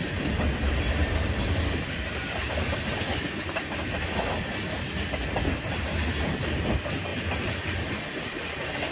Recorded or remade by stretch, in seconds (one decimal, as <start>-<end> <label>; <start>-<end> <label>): 0.0-8.9 recorded